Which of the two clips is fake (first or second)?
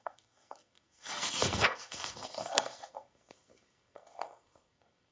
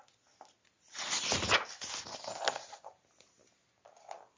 first